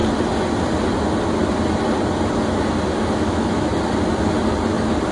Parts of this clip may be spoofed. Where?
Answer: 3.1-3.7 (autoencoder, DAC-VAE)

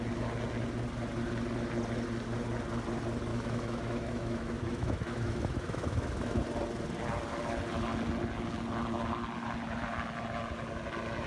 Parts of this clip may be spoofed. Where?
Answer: 3.3-6.4 (autoencoder, DAC-VAE)

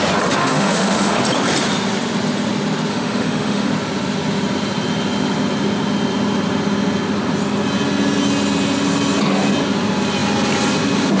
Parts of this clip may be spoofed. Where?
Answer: 0.4-1.2 (autoencoder, DAC-VAE); 2.9-3.7

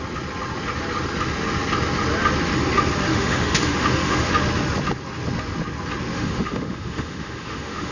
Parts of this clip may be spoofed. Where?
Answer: 3.1-4.3 (autoencoder, DAC-VAE); 6.1-7.9

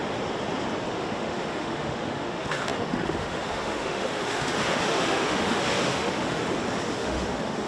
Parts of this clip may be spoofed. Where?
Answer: 0.9-6.4 (autoencoder, DAC-VAE); 7.0-7.7

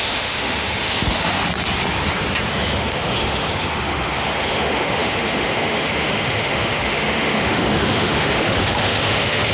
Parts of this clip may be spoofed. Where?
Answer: 0.0-1.3 (autoencoder, DAC-VAE); 2.5-9.5

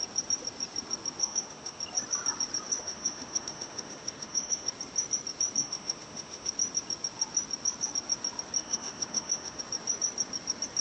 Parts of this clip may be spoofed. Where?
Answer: 1.2-1.8 (autoencoder, DAC-VAE); 2.8-4.7; 5.6-6.5; 8.6-9.6

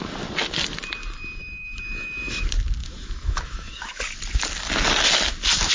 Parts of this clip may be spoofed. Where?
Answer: 1.4-2.4 (autoencoder, DAC-VAE); 2.8-4.0